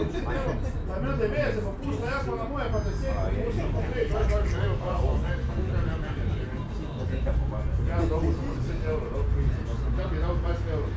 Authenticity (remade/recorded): recorded